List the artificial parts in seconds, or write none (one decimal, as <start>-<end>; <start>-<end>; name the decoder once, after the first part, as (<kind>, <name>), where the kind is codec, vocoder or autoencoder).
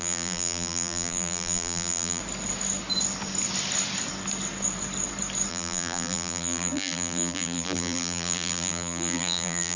0.0-2.2 (vocoder, BigVGAN v2); 5.5-9.8